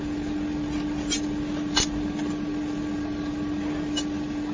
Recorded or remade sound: recorded